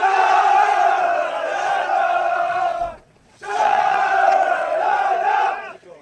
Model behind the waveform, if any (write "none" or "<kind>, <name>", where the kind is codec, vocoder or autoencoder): vocoder, WaveNeXt